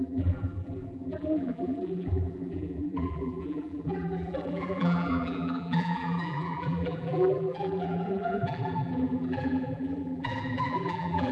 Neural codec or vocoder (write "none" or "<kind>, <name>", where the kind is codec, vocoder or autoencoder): vocoder, BigVGAN v2